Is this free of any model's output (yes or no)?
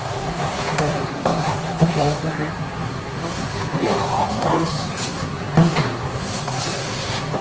no